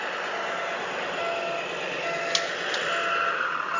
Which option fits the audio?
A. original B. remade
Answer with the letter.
A